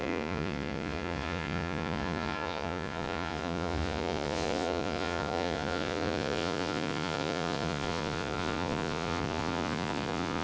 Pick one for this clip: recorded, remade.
remade